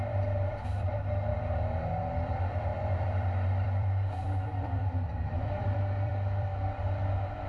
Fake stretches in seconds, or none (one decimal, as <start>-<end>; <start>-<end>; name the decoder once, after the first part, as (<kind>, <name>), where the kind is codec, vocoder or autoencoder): 0.0-6.5 (vocoder, BigVGAN v2)